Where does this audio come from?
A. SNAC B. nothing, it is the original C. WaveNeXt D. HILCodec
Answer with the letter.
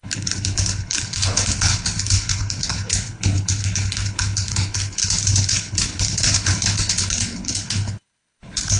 D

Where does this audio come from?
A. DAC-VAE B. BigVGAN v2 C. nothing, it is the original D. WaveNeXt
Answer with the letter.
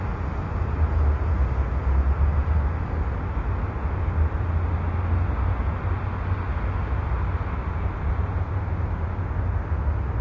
C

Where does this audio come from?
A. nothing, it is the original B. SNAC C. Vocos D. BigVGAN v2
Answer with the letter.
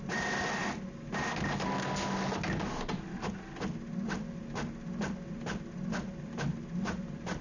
A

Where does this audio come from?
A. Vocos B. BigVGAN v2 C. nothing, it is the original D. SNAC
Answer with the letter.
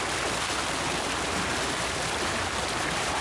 C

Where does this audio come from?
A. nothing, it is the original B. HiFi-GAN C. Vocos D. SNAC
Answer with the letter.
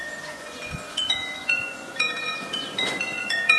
C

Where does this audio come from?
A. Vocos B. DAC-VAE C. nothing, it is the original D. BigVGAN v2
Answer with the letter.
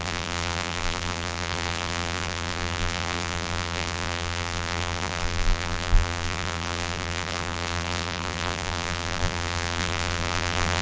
D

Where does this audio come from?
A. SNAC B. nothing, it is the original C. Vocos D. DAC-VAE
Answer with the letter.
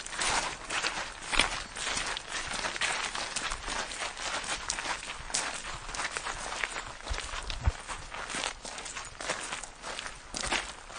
B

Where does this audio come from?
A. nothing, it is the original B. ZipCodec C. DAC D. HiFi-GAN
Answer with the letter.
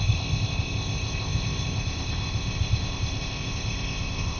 B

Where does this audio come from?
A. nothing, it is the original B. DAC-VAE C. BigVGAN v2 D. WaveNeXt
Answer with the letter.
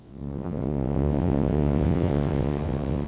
D